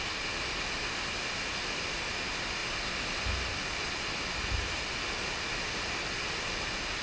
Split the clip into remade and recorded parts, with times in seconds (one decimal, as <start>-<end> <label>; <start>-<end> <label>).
0.0-7.0 recorded